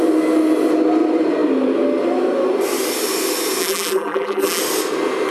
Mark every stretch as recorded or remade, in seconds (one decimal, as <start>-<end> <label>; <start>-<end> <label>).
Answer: 0.0-3.6 recorded; 3.6-4.6 remade; 4.6-5.3 recorded